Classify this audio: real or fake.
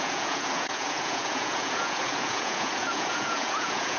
fake